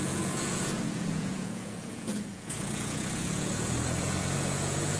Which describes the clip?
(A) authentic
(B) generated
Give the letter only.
B